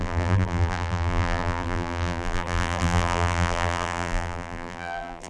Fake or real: fake